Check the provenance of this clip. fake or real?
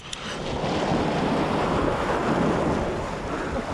real